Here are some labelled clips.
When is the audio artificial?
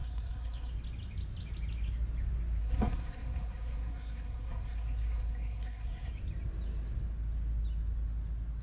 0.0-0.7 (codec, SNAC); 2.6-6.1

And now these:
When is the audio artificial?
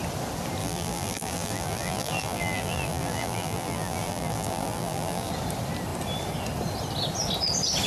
0.6-5.3 (vocoder, BigVGAN v2)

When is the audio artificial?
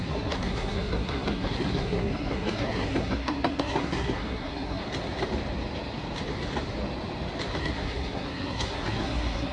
0.0-4.8 (codec, SNAC); 7.6-9.5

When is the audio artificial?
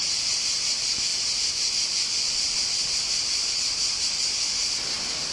none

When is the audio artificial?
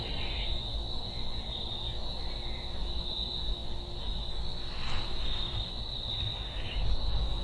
none